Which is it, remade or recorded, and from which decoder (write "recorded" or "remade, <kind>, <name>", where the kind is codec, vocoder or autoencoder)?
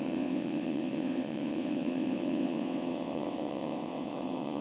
remade, vocoder, WaveNeXt